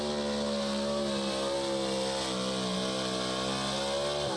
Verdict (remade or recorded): recorded